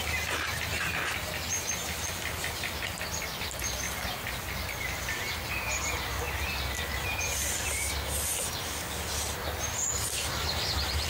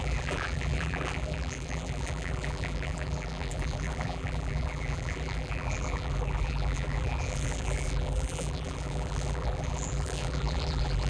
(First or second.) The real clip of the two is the first